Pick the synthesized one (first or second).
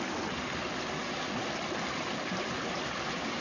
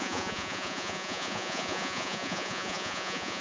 second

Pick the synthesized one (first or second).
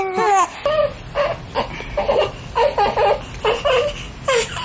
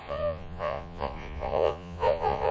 second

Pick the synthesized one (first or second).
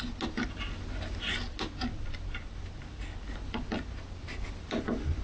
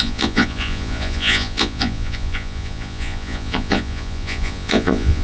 second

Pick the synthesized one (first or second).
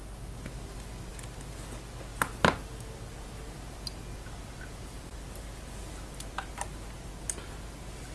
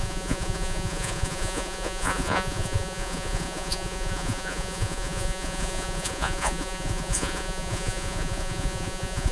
second